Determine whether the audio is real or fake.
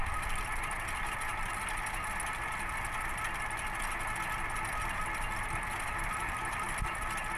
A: real